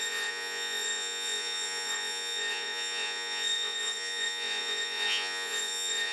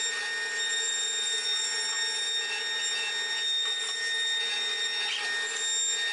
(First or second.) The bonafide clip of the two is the second